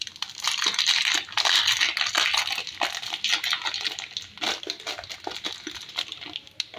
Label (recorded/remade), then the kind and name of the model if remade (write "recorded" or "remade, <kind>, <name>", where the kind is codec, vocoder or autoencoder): recorded